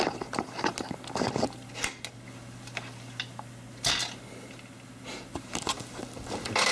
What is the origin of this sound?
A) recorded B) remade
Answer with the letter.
A